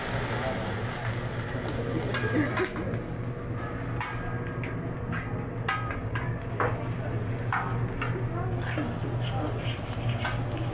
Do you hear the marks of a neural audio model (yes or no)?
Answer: no